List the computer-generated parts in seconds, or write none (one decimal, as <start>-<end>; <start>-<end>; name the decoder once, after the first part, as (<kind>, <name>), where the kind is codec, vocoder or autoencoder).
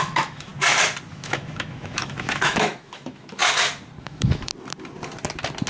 0.0-0.5 (autoencoder, DAC-VAE); 1.1-3.4; 4.0-4.5